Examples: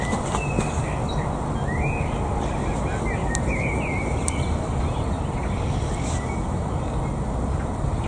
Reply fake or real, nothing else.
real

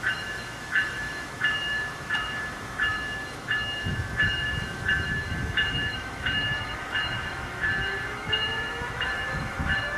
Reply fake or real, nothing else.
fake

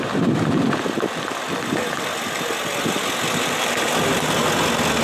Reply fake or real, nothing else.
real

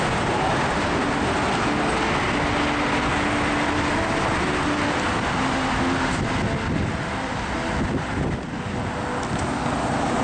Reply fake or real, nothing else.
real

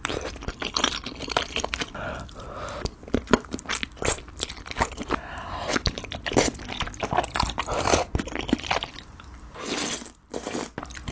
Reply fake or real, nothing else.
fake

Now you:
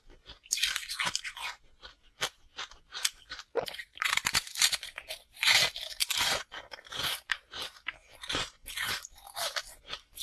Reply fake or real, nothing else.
fake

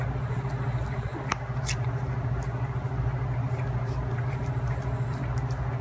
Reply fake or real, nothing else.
real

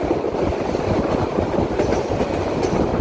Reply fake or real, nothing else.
real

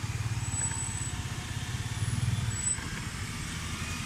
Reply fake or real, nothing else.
real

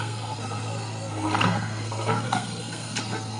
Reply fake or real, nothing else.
fake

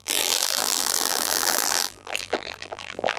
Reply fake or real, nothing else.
fake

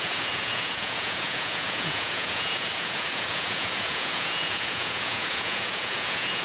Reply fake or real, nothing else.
fake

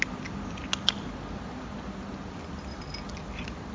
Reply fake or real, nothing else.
real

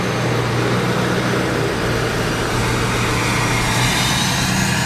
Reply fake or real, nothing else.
real